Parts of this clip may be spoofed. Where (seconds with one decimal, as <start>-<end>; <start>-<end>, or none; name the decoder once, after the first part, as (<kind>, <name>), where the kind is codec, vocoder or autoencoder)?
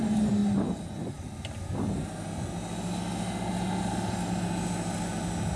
none